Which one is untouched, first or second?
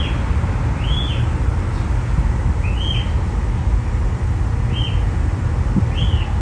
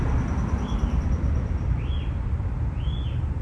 first